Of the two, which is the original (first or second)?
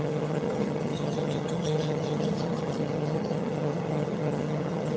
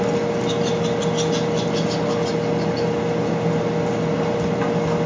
second